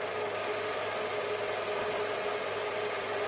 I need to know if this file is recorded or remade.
recorded